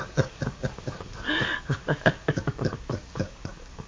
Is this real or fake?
fake